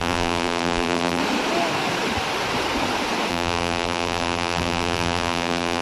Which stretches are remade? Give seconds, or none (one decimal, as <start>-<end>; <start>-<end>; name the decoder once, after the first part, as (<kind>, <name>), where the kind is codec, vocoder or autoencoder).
0.0-1.2 (vocoder, BigVGAN v2); 3.3-5.8